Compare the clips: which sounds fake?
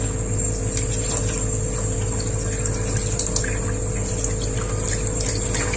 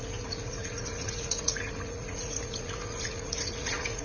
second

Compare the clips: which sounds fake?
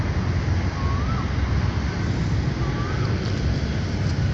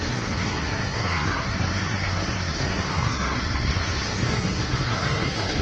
second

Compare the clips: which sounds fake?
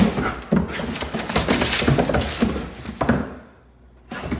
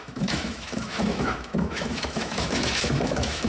second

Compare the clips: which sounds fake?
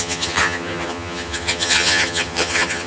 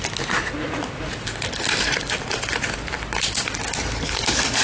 first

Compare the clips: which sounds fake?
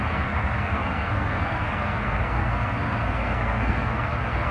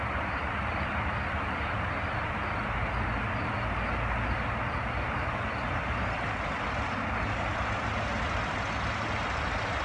first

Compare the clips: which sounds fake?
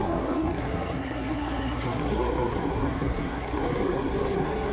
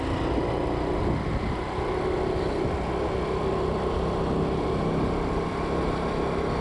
first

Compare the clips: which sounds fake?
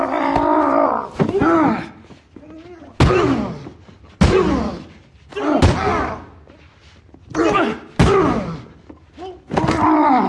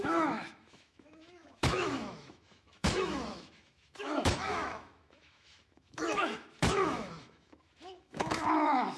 second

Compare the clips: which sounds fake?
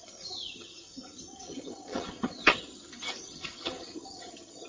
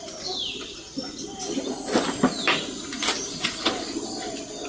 first